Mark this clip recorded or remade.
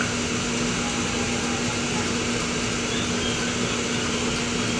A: recorded